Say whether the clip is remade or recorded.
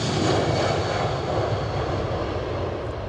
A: recorded